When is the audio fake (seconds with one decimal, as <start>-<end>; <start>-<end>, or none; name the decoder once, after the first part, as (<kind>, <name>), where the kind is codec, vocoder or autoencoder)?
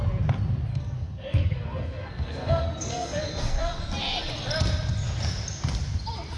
0.7-3.8 (codec, SNAC)